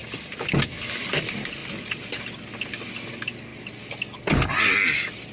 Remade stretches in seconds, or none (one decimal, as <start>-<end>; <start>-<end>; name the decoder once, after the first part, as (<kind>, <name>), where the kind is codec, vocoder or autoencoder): none